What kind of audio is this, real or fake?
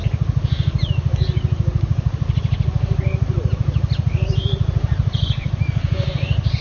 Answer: real